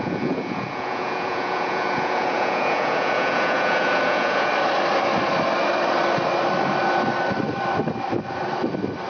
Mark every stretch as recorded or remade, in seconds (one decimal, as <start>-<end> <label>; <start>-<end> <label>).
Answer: 0.0-4.5 remade; 4.5-9.1 recorded